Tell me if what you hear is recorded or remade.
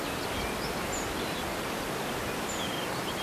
recorded